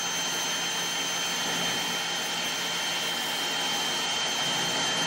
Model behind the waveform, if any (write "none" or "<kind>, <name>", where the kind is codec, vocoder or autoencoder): none